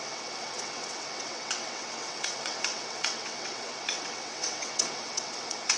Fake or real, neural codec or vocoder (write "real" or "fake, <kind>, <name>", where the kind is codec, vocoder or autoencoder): fake, vocoder, WaveNeXt